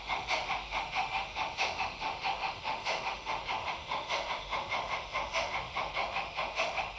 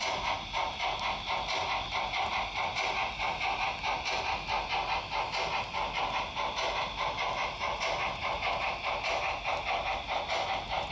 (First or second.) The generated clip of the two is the first